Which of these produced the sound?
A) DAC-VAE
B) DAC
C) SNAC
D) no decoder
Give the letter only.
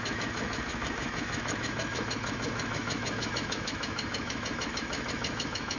A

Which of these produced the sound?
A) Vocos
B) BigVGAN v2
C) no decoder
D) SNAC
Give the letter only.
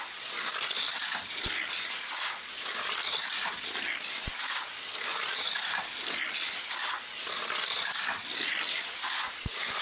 C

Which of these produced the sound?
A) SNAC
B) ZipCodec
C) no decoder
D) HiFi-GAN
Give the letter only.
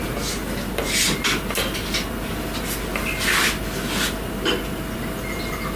C